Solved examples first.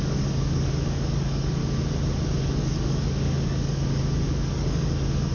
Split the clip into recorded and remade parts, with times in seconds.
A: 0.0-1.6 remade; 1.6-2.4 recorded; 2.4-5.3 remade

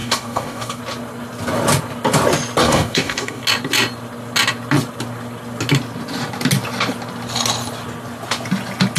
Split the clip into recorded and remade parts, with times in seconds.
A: 0.0-0.8 remade; 0.8-2.6 recorded; 2.6-3.4 remade; 3.4-9.0 recorded